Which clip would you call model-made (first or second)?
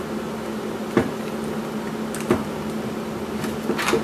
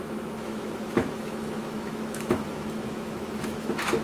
second